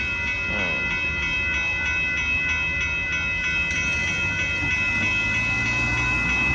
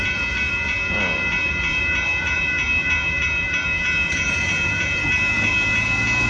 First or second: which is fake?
second